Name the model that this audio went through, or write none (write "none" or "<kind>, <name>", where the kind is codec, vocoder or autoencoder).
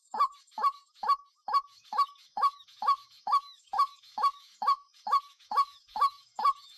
autoencoder, DAC-VAE